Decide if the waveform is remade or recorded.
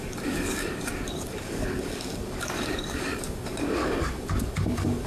remade